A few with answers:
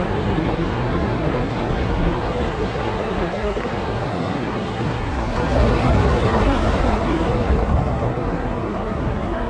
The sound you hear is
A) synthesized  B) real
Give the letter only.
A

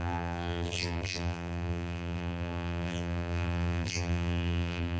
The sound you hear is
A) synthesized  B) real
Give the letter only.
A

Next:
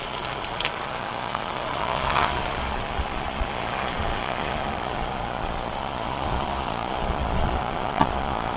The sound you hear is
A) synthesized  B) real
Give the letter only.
A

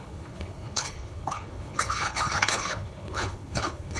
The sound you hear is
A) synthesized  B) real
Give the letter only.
A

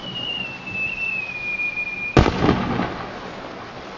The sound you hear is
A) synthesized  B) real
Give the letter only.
B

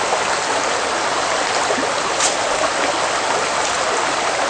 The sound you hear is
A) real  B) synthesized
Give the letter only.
A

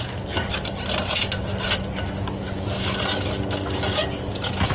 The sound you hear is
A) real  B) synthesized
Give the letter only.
A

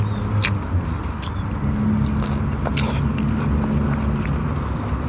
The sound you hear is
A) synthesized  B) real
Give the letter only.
B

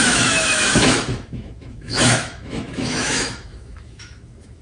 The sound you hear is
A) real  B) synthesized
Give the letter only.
B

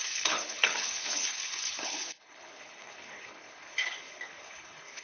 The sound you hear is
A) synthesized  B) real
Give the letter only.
A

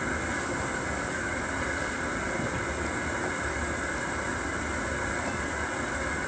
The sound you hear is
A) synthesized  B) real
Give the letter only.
B